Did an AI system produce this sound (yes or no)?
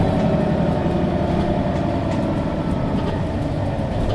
no